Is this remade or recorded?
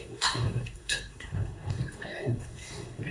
remade